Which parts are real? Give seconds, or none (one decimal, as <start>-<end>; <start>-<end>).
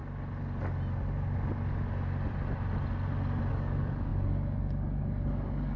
0.0-3.5